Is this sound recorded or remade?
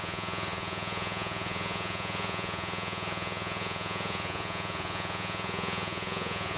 remade